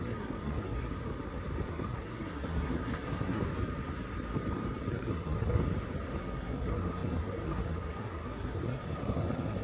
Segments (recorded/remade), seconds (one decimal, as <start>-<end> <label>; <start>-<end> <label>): 0.0-1.1 remade; 1.1-1.7 recorded; 1.7-3.4 remade; 3.4-4.9 recorded; 4.9-5.6 remade; 5.6-6.2 recorded; 6.2-9.6 remade